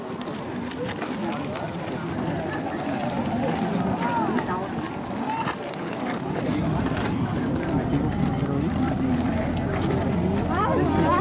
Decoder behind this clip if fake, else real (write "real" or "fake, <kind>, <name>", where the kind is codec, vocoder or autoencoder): real